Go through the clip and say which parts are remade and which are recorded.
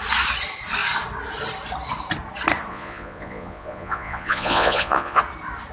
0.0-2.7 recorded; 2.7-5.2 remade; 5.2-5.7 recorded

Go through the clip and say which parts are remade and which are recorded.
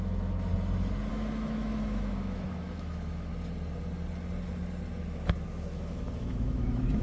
0.0-0.5 remade; 0.5-1.1 recorded; 1.1-3.3 remade; 3.3-5.0 recorded; 5.0-7.0 remade